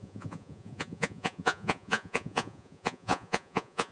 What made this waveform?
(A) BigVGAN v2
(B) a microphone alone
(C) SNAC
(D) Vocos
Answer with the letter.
D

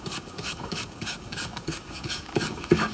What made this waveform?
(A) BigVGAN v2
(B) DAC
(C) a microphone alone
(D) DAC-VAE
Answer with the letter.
B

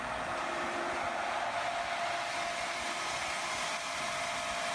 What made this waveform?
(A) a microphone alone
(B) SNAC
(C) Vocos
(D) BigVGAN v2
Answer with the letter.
A